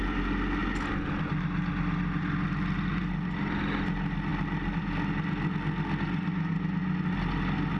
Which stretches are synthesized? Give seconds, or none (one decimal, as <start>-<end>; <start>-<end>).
none